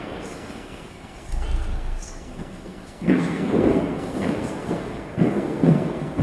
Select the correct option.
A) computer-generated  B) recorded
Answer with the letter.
A